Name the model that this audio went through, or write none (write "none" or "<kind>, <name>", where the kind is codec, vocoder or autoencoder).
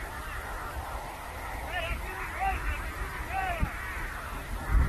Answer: vocoder, BigVGAN v2